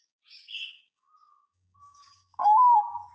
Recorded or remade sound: remade